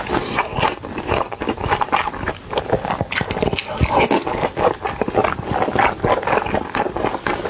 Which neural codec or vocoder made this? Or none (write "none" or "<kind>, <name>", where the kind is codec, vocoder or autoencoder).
none